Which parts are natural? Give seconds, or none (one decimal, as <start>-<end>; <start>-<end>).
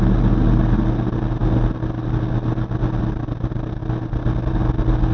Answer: 0.0-5.1